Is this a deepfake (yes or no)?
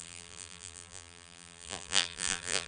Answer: yes